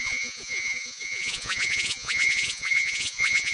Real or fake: fake